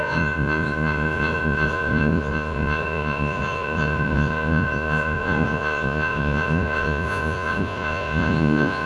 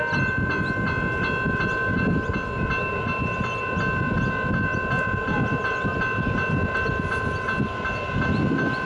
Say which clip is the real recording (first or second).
second